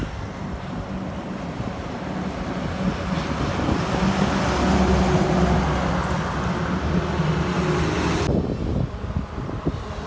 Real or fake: real